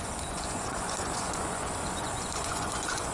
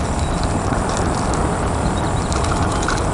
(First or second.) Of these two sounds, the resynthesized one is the first